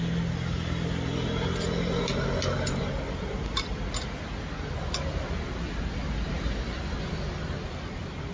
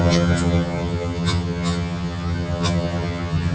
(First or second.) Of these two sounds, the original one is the first